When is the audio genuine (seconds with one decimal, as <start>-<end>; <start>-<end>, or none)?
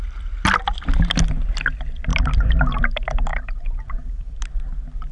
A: 0.0-3.3; 4.4-5.1